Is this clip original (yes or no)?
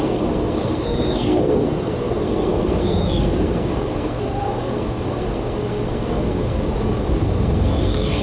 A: no